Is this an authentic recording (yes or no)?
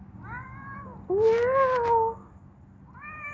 yes